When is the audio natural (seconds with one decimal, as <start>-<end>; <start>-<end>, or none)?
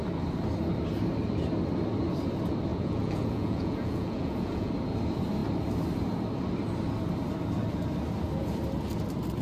0.0-2.7; 4.7-9.4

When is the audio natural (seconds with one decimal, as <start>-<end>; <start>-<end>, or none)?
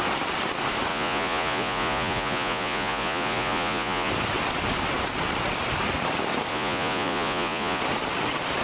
0.0-0.9; 4.1-6.5; 7.8-8.6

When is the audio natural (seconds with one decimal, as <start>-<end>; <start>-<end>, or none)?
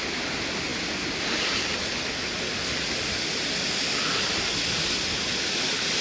0.0-6.0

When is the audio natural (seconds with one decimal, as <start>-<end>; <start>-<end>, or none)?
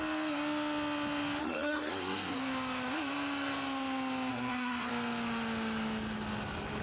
0.0-1.4; 2.4-4.3; 4.9-6.8